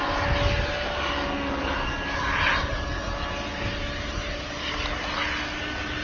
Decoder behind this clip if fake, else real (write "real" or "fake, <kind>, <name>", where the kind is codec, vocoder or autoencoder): real